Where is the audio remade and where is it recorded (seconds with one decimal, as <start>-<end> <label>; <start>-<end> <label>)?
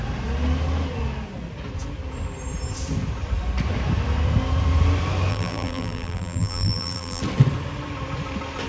0.0-5.3 recorded; 5.3-7.2 remade; 7.2-8.7 recorded